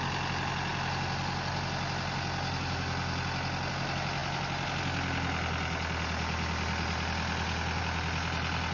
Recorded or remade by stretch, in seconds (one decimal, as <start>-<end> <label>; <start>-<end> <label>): 0.0-8.7 recorded